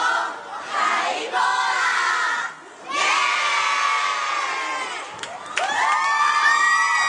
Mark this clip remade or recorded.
recorded